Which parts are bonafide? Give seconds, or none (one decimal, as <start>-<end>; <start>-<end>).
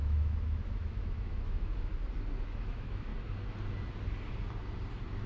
1.9-2.5; 3.1-5.3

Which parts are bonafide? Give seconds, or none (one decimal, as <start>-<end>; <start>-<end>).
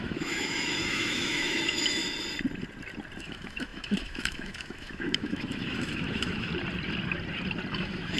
2.0-3.2; 6.5-7.7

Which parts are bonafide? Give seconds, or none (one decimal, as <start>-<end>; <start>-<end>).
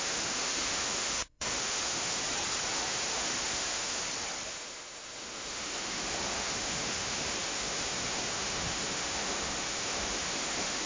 2.2-2.7; 4.0-4.5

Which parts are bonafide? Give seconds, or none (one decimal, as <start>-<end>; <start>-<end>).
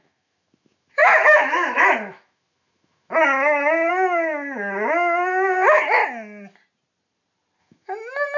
6.0-7.6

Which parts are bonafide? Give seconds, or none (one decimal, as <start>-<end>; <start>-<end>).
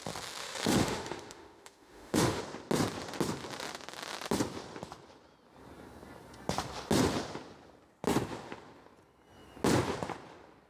0.0-0.4; 2.4-10.7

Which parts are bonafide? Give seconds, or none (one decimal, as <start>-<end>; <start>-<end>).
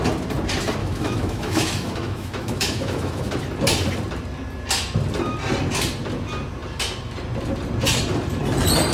0.0-0.8; 3.3-8.9